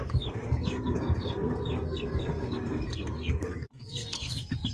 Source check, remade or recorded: remade